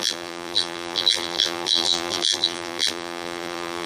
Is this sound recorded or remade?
remade